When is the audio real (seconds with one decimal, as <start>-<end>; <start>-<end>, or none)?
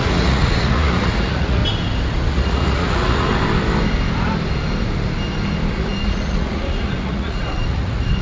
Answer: 1.6-2.3; 3.3-5.7